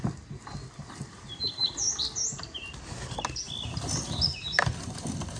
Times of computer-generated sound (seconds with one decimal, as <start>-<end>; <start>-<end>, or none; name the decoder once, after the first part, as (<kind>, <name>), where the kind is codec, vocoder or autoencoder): none

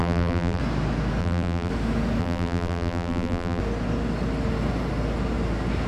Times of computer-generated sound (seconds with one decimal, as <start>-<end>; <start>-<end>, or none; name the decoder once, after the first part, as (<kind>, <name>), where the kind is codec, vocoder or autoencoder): 0.0-0.6 (vocoder, BigVGAN v2); 1.2-1.7; 2.2-3.6

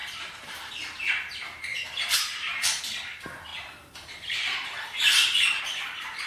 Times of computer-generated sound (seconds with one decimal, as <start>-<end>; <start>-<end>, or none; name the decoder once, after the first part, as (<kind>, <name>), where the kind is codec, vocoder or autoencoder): 0.0-0.7 (vocoder, BigVGAN v2); 1.7-2.8; 3.5-5.6

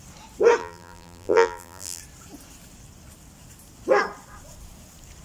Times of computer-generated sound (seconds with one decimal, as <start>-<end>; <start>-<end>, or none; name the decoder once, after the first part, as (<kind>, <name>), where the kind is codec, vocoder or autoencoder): 0.6-2.0 (vocoder, BigVGAN v2)

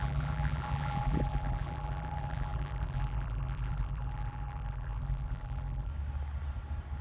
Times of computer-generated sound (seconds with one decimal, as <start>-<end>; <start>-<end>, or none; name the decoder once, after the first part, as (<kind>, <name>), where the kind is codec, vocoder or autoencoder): 0.0-5.9 (vocoder, BigVGAN v2)

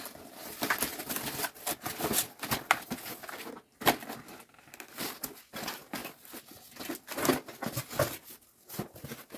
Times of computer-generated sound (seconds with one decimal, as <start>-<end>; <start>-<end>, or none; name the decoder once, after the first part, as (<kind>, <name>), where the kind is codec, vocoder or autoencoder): 0.9-2.5 (vocoder, BigVGAN v2)